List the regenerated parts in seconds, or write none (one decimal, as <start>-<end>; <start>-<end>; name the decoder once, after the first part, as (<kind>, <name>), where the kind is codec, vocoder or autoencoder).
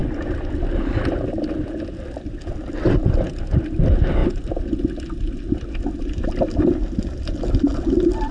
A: none